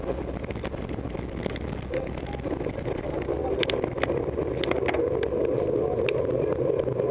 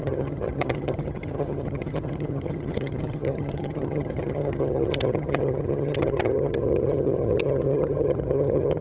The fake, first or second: second